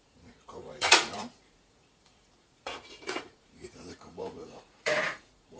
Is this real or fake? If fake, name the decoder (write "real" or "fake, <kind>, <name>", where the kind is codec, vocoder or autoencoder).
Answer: fake, vocoder, Vocos